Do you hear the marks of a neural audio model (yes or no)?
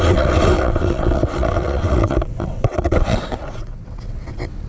yes